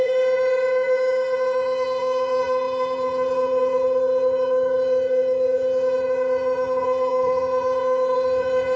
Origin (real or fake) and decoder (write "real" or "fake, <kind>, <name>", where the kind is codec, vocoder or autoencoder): fake, vocoder, Vocos